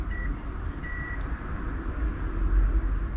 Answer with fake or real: real